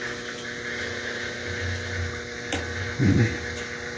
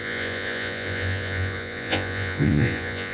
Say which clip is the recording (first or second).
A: first